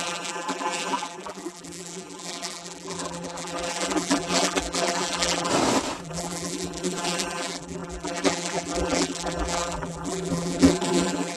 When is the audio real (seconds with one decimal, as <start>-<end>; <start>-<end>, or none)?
5.5-6.0